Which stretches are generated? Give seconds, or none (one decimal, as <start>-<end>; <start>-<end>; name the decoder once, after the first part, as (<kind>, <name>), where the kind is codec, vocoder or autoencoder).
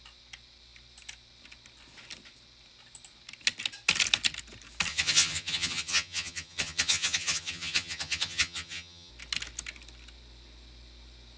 4.9-9.1 (vocoder, HiFi-GAN)